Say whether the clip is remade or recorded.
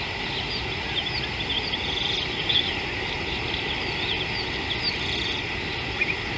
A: recorded